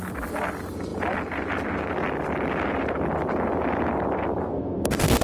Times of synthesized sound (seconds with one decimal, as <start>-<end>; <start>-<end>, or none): 4.4-5.2